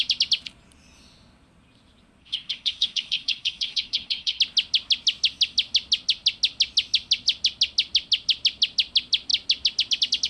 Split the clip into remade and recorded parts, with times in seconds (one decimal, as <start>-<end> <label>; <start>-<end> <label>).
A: 0.0-2.2 recorded; 2.2-4.4 remade; 4.4-10.3 recorded